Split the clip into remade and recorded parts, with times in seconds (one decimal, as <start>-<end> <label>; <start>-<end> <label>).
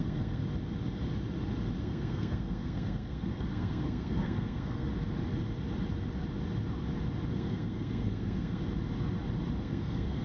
0.0-0.4 remade; 0.4-1.8 recorded; 1.8-4.9 remade; 4.9-7.3 recorded; 7.3-8.6 remade; 8.6-9.6 recorded; 9.6-10.2 remade